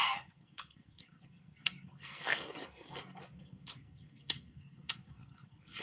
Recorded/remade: remade